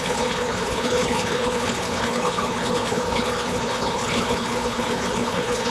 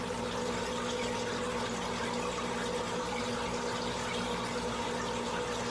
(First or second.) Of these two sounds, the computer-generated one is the first